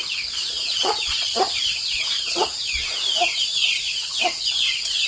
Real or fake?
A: fake